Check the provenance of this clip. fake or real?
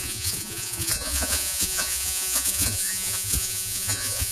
fake